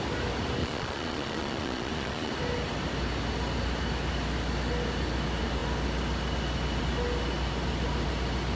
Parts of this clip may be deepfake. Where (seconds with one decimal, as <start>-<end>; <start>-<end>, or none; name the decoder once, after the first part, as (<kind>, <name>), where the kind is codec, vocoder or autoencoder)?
0.6-2.3 (vocoder, Vocos)